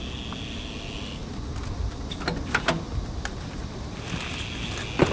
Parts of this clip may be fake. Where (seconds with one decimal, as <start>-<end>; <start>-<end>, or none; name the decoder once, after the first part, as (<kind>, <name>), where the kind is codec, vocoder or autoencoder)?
none